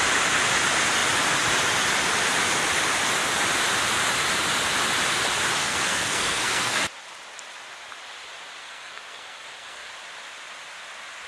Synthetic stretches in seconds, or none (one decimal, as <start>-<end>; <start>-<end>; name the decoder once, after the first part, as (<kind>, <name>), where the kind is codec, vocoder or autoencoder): 5.6-6.9 (codec, SNAC); 8.6-9.9